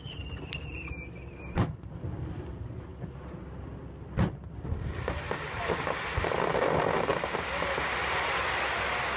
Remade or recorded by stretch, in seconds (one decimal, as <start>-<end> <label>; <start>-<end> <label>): 0.0-9.2 recorded